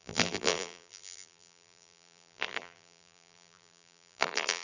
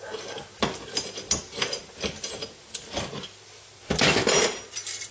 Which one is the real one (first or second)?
second